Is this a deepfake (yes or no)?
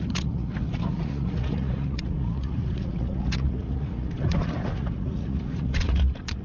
yes